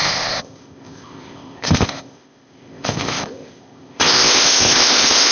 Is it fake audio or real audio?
fake